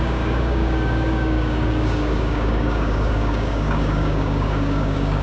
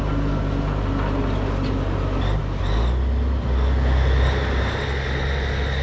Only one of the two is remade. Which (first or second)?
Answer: first